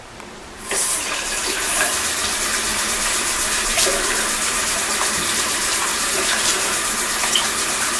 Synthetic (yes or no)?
yes